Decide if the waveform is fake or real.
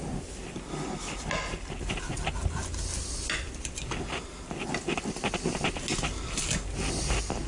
real